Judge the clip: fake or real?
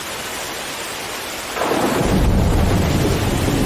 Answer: real